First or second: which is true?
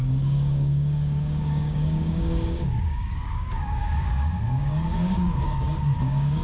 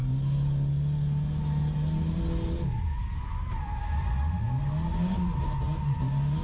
second